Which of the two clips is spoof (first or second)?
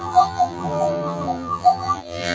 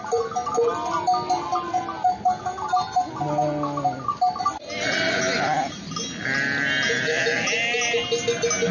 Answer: first